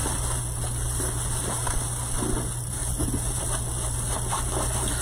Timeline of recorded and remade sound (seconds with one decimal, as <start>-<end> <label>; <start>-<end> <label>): 0.0-1.4 recorded; 1.4-2.8 remade; 2.8-5.0 recorded